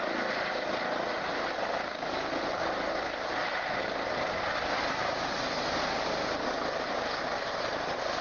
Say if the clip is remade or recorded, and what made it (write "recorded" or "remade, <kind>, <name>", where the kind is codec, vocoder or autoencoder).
recorded